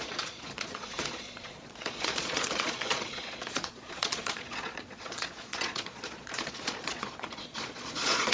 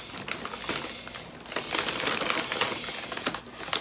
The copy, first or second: first